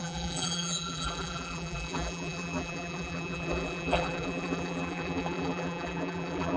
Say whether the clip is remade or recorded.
remade